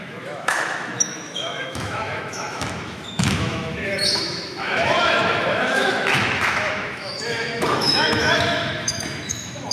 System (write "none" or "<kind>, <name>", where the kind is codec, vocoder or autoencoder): autoencoder, DAC-VAE